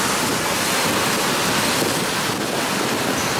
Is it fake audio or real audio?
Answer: real